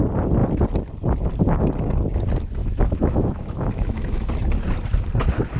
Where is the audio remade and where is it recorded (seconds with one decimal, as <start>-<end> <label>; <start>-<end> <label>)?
0.0-2.6 recorded; 2.6-4.3 remade; 4.3-5.6 recorded